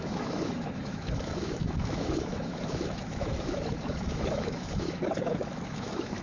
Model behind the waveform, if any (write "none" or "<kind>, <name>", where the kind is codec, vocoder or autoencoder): autoencoder, DAC-VAE